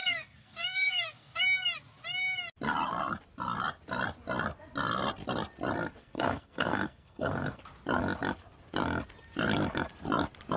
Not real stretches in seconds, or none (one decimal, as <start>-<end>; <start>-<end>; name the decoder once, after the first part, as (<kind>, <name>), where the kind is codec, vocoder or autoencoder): 0.0-1.4 (codec, SNAC); 6.0-7.6